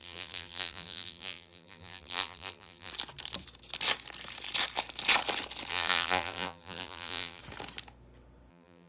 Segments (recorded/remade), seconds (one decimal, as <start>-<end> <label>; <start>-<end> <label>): 0.0-2.9 remade; 2.9-5.7 recorded; 5.7-7.4 remade; 7.4-8.5 recorded; 8.5-8.9 remade